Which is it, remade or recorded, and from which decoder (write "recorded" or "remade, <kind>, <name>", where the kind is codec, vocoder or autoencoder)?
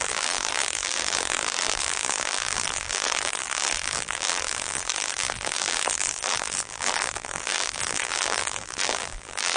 remade, vocoder, BigVGAN v2